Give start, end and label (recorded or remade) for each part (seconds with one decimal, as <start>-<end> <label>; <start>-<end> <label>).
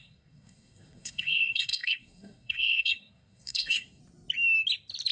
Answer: 0.0-4.0 remade; 4.0-5.1 recorded